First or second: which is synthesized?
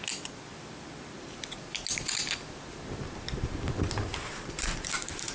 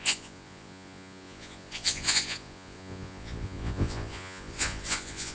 second